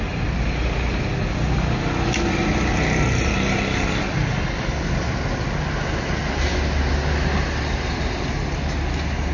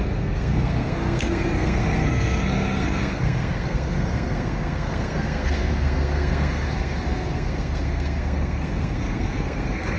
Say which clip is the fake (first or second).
second